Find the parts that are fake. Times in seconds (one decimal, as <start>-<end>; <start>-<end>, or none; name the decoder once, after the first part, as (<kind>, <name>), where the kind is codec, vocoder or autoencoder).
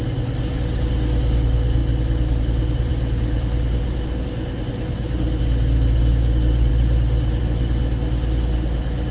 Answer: none